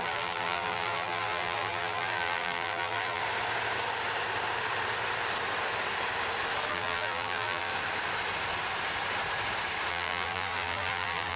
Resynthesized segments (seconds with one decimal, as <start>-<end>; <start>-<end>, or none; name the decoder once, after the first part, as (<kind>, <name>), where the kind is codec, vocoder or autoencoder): 0.0-3.2 (vocoder, BigVGAN v2); 6.7-7.7; 9.9-11.4